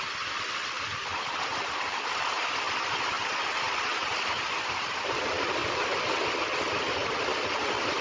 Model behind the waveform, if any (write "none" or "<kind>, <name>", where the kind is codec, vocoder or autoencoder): none